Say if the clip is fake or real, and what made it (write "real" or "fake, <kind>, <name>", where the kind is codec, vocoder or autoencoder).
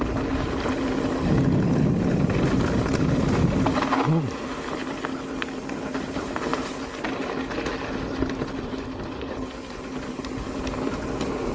real